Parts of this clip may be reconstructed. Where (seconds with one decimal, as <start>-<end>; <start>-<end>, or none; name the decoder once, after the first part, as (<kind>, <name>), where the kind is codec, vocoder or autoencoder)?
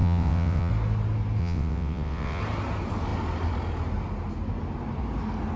0.0-0.7 (vocoder, WaveNeXt); 1.4-2.4